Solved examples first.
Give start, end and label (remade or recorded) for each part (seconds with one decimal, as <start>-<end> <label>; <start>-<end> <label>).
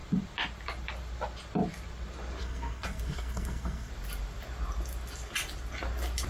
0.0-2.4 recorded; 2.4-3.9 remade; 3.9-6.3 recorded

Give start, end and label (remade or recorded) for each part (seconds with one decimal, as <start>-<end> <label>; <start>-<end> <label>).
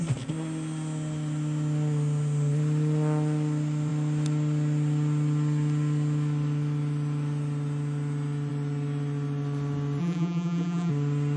0.0-10.0 recorded; 10.0-10.9 remade; 10.9-11.4 recorded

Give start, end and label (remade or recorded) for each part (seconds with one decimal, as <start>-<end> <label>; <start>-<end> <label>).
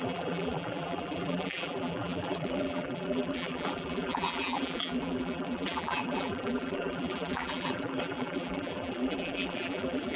0.0-10.2 remade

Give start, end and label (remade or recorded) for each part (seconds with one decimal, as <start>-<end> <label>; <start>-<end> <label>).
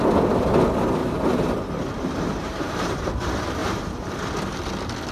0.0-1.0 recorded; 1.0-3.1 remade; 3.1-3.6 recorded; 3.6-4.3 remade; 4.3-5.1 recorded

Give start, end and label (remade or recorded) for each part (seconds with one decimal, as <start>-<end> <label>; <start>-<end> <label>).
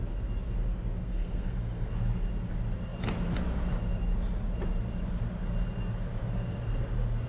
0.0-1.0 recorded; 1.0-1.9 remade; 1.9-7.3 recorded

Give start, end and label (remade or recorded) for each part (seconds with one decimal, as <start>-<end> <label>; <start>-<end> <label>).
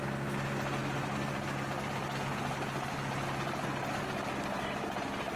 0.0-5.4 recorded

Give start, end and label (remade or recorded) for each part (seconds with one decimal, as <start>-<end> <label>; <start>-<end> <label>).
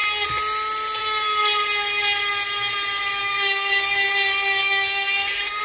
0.0-3.2 recorded; 3.2-4.1 remade; 4.1-4.6 recorded; 4.6-5.6 remade